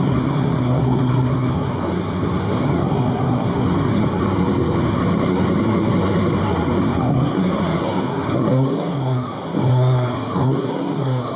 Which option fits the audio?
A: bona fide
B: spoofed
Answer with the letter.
B